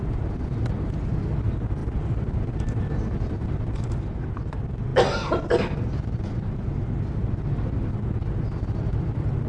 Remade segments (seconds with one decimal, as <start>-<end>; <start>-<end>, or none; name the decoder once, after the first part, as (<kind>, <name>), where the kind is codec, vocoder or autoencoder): none